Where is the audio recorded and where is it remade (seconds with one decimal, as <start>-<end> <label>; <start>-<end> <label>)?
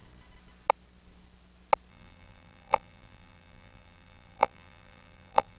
0.0-1.9 recorded; 1.9-5.6 remade